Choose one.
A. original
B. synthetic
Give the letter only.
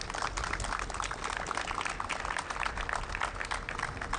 A